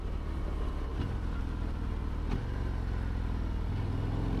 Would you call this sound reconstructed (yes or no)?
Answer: no